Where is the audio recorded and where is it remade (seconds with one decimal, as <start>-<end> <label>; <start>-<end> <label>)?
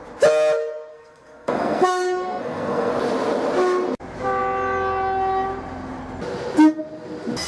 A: 0.0-0.9 recorded; 0.9-2.9 remade; 2.9-7.5 recorded